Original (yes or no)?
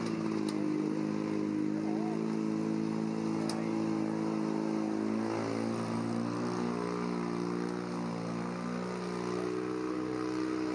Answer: yes